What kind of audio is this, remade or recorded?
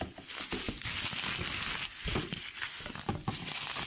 recorded